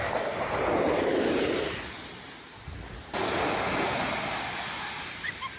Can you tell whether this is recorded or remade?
recorded